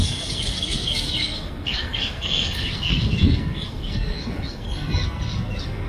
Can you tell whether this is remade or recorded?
remade